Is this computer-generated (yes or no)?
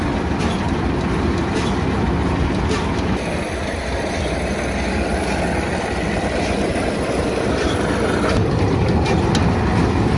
no